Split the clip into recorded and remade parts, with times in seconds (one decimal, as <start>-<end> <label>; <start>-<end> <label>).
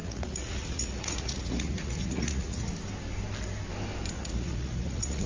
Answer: 0.0-2.7 remade; 2.7-4.1 recorded; 4.1-5.3 remade